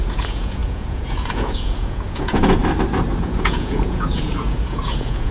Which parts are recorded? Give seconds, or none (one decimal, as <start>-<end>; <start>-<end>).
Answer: 2.6-3.2